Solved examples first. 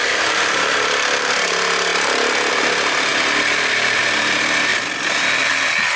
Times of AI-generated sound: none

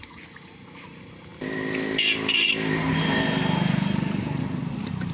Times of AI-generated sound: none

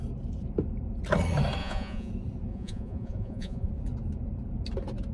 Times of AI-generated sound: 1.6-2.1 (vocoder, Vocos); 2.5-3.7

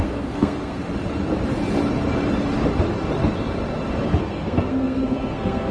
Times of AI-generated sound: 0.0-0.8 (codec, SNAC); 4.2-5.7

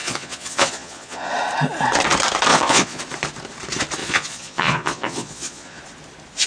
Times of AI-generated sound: 0.0-1.3 (vocoder, Vocos); 2.5-3.0; 4.0-5.8

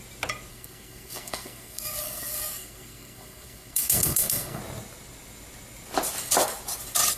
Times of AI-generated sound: 0.5-4.6 (codec, SNAC)

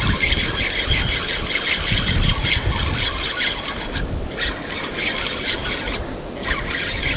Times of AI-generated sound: none